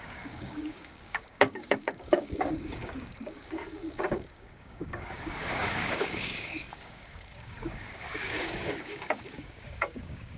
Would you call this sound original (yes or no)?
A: no